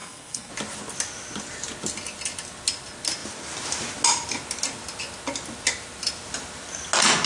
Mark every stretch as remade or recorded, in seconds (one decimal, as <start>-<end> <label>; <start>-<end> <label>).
0.0-0.5 remade; 0.5-7.3 recorded